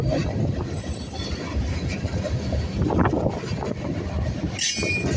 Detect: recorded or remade recorded